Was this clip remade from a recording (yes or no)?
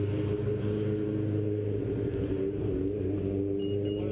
no